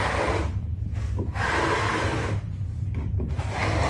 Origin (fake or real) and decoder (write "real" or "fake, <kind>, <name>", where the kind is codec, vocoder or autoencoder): real